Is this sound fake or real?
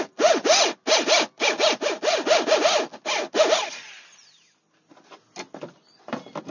real